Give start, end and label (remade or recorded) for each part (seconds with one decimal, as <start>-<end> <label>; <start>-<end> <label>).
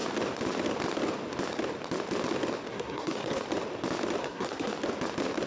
0.0-2.7 recorded; 2.7-3.4 remade; 3.4-4.2 recorded; 4.2-4.7 remade; 4.7-5.5 recorded